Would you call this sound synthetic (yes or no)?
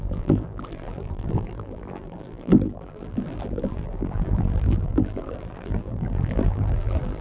yes